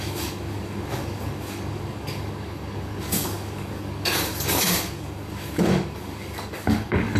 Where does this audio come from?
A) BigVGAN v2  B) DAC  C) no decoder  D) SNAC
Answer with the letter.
B